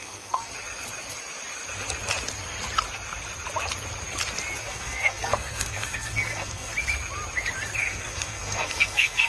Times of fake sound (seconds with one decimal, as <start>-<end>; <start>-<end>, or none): 0.0-0.5; 4.6-6.7; 7.8-9.3